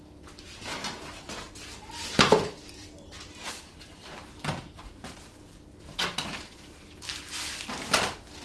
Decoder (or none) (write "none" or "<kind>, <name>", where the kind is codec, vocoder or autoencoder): none